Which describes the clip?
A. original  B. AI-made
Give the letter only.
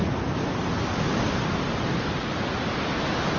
A